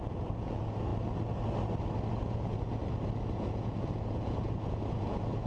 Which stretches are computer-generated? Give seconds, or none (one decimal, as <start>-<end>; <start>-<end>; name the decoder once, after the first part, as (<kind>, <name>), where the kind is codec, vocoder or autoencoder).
0.0-0.9 (vocoder, Vocos); 2.1-2.8; 3.3-5.5